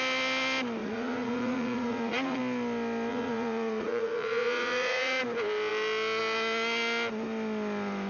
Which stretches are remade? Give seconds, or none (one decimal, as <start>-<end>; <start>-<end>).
0.8-2.4; 3.1-5.2

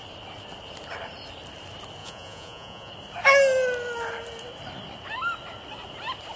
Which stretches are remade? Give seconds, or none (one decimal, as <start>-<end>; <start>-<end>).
2.0-2.9

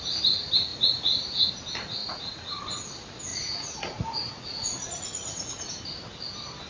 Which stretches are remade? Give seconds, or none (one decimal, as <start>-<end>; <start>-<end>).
0.7-1.5; 2.0-2.6; 3.3-5.7

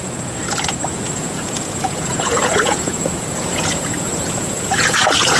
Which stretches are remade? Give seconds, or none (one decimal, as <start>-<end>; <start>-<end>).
0.0-0.4; 0.9-5.4

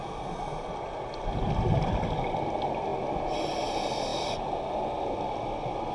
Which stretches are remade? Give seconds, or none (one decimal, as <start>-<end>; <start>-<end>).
none